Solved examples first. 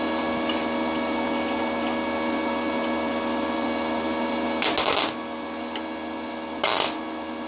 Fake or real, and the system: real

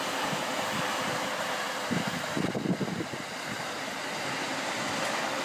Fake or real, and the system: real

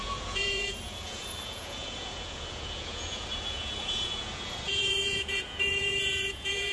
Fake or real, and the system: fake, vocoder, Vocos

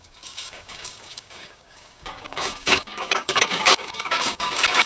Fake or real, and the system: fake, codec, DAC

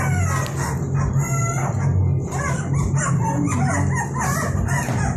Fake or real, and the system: real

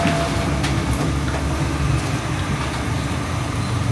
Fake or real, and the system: real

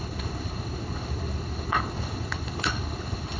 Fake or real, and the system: fake, codec, HILCodec